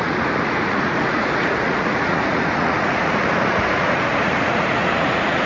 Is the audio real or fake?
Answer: fake